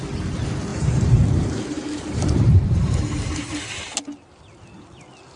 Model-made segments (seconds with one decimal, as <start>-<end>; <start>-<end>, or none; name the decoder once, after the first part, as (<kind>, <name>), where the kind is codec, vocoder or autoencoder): 0.7-3.0 (vocoder, BigVGAN v2)